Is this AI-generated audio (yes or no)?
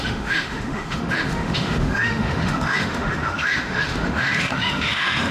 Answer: yes